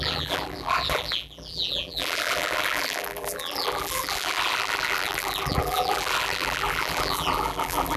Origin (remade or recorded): remade